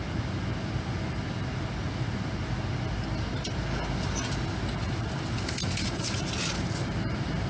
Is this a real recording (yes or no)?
yes